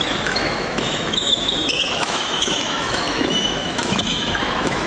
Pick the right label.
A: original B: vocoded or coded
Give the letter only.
B